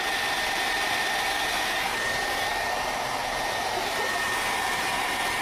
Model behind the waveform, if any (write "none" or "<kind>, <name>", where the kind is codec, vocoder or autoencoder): vocoder, BigVGAN v2